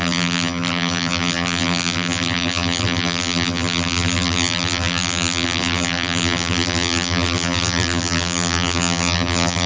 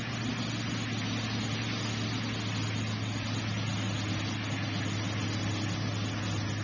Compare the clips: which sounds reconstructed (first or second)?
first